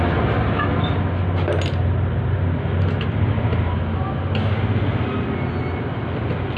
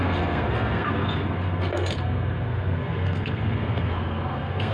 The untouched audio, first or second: first